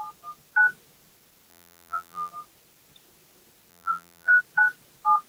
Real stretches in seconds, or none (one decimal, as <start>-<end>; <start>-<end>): 0.0-1.5; 2.3-3.7; 4.4-5.3